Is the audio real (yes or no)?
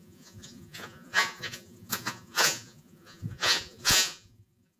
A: no